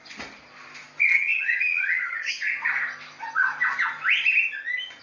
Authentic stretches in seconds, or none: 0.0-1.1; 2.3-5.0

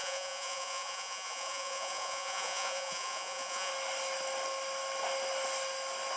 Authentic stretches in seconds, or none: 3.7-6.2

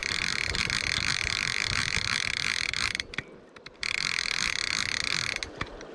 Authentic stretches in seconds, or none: 0.6-1.1; 4.6-5.9